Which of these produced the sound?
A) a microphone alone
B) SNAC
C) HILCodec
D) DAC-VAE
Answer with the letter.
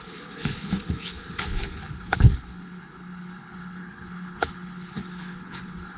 C